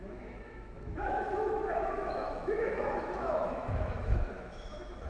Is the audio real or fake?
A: fake